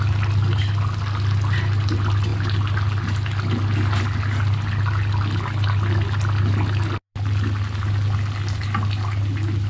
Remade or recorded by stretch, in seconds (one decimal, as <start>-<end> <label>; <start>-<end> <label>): 0.0-9.7 recorded

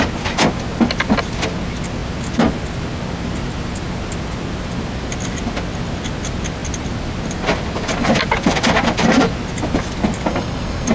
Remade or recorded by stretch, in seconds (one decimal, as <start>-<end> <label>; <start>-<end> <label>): 0.0-10.3 recorded; 10.3-10.9 remade